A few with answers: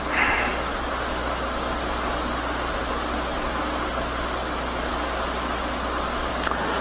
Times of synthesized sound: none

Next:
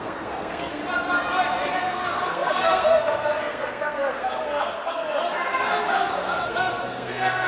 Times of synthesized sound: 0.0-0.8 (codec, SNAC); 1.8-7.5

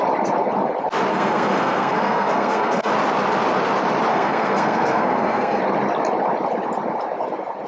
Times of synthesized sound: 1.1-2.9 (codec, SNAC); 4.1-5.6

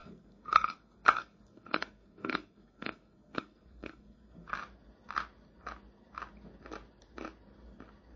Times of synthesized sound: 0.0-4.5 (codec, SNAC)

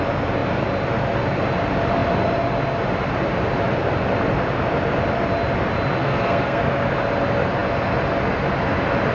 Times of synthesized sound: 6.0-6.6 (codec, SNAC)

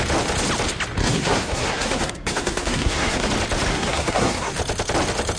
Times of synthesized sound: 1.0-3.3 (codec, SNAC); 3.7-4.5

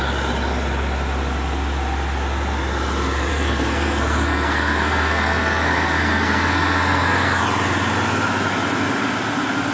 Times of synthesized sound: 3.3-7.4 (codec, SNAC)